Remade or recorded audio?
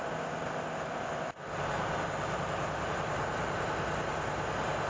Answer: recorded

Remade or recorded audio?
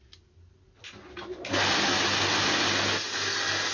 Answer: recorded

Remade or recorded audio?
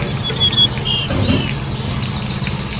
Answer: recorded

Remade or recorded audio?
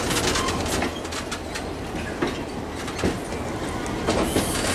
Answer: recorded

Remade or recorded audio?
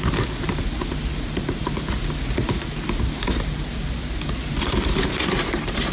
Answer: recorded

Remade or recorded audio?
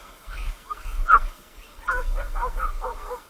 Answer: remade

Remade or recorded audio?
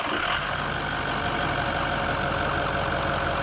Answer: recorded